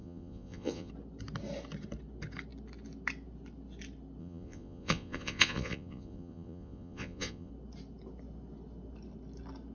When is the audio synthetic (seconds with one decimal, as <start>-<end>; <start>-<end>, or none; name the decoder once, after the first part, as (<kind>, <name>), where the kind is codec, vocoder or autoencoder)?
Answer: 0.0-0.9 (vocoder, Vocos); 4.2-7.5